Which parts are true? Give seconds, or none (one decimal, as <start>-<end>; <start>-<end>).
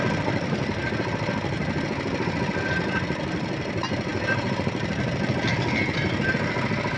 0.0-7.0